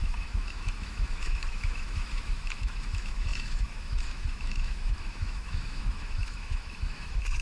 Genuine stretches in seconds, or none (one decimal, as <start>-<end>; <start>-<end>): none